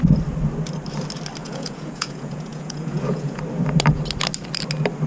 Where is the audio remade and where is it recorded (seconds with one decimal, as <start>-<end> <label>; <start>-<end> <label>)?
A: 0.0-1.4 recorded; 1.4-3.4 remade; 3.4-5.1 recorded